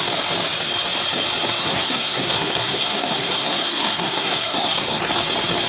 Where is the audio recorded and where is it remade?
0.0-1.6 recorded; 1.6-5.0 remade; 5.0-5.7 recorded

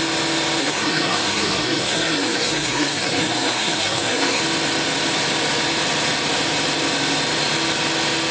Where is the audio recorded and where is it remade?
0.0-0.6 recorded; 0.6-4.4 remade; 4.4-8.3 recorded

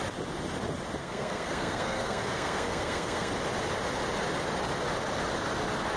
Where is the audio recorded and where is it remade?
0.0-1.0 recorded; 1.0-3.3 remade; 3.3-6.0 recorded